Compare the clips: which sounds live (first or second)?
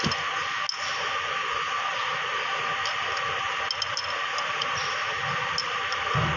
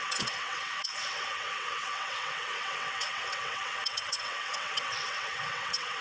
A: first